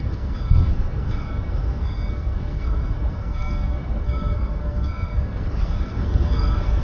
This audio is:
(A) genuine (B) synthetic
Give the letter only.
B